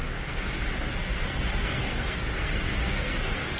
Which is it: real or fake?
fake